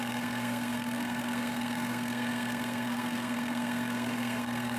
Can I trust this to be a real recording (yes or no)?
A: no